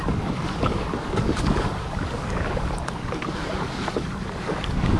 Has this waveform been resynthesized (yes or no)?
yes